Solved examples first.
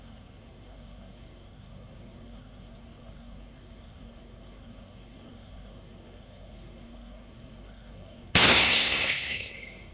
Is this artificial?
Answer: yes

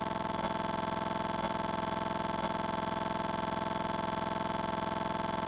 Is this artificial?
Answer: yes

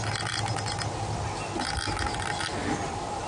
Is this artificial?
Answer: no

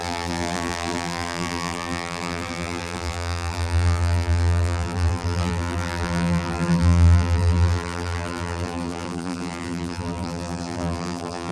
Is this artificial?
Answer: yes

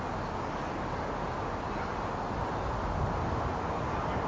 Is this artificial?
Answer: no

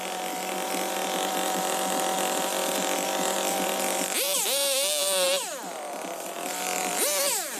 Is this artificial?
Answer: no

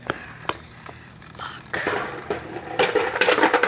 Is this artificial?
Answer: yes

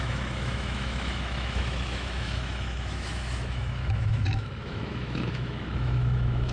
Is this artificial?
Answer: yes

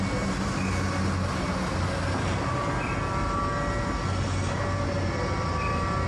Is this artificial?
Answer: no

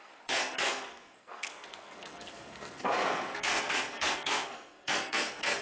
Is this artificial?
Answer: yes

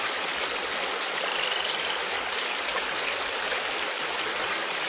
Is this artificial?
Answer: no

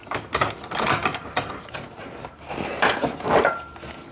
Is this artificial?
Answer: no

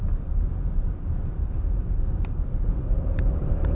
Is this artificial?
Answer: yes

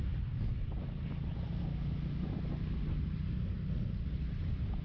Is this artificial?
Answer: no